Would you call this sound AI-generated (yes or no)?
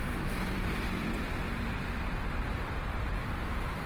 yes